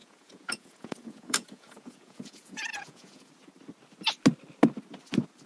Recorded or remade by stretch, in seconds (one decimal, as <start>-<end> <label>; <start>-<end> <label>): 0.0-3.3 remade; 3.3-5.5 recorded